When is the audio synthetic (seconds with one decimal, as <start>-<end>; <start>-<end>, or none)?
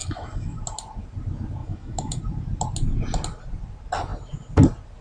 0.0-0.6; 1.6-2.2